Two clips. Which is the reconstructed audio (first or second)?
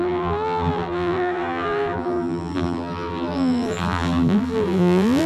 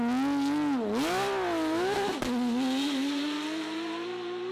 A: first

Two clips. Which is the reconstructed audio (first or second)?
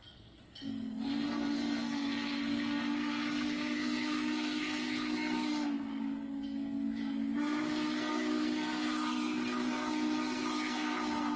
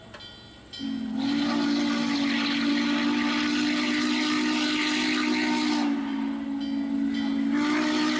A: first